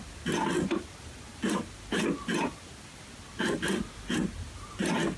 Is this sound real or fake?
real